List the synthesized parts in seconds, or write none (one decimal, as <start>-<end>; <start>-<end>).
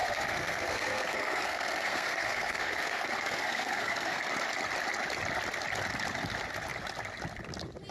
0.0-4.2